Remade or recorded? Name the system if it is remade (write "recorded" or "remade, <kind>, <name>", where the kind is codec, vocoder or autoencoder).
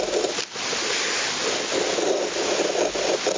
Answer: recorded